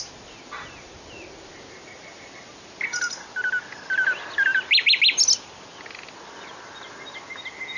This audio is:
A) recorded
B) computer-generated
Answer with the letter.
A